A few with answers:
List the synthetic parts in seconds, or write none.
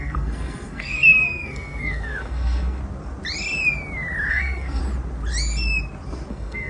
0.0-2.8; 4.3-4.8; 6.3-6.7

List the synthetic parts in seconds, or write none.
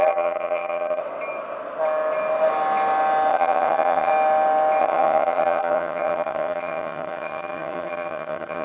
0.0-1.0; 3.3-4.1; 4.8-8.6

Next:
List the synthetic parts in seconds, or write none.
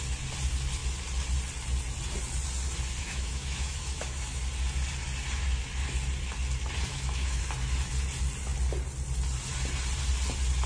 3.0-4.4; 6.9-7.4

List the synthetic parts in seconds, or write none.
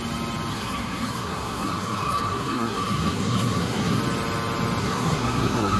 0.5-4.0; 4.8-5.8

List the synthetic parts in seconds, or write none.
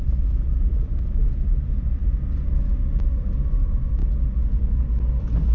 none